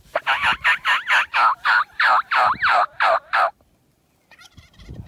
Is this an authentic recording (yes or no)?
yes